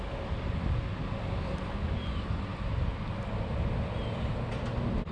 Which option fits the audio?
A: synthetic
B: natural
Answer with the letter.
B